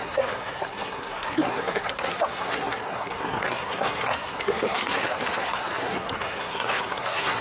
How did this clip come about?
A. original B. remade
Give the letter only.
B